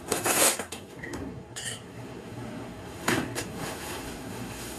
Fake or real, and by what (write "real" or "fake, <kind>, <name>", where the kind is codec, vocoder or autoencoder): fake, codec, SNAC